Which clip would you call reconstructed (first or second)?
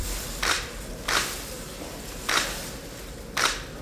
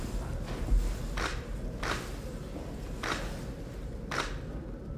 first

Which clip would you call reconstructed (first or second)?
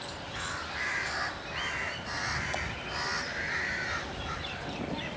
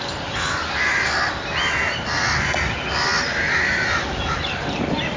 first